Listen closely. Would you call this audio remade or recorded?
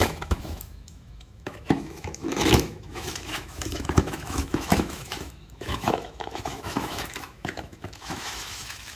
remade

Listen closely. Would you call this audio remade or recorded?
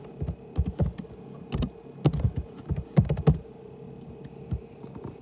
recorded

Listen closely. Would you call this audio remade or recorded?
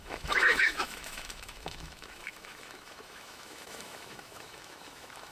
remade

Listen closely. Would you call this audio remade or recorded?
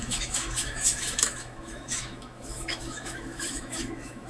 remade